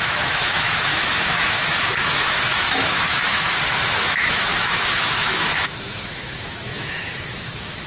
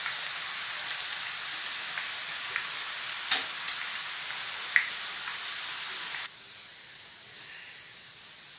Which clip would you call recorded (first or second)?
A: second